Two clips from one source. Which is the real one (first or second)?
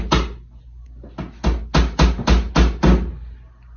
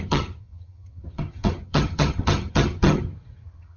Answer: first